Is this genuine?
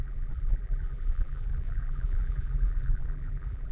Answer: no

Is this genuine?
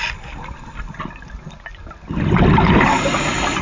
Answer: no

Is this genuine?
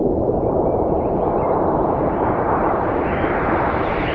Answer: no